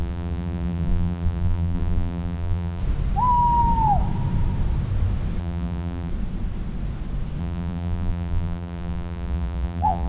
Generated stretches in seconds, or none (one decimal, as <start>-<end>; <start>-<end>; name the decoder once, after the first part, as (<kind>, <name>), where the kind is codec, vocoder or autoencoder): 0.0-2.8 (vocoder, BigVGAN v2); 5.4-6.1; 7.4-10.1